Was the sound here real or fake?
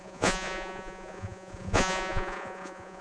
fake